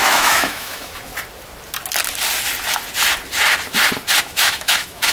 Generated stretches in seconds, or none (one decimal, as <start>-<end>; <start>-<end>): 0.0-1.1; 4.2-5.1